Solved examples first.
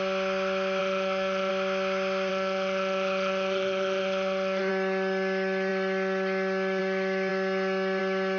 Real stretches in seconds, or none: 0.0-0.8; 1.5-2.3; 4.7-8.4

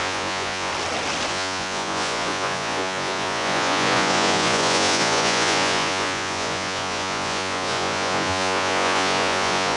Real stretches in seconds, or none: 0.7-1.3

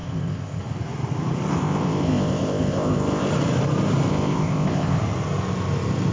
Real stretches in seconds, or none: 0.6-1.5; 3.3-4.1; 5.0-6.1

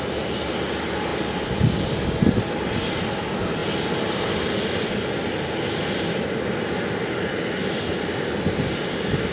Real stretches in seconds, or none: 0.0-9.3